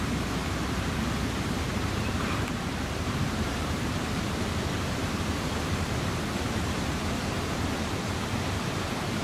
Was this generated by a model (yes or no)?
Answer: yes